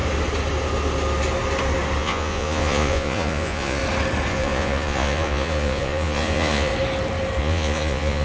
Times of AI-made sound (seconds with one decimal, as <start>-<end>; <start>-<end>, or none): 2.0-3.8; 4.3-6.7; 7.4-8.2